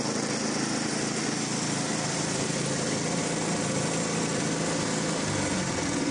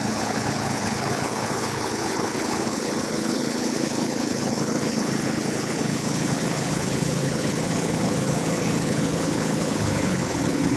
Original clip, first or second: first